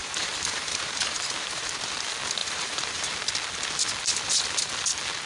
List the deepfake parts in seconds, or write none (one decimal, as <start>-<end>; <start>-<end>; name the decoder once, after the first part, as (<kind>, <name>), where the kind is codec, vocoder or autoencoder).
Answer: 0.0-1.7 (vocoder, BigVGAN v2); 2.4-3.1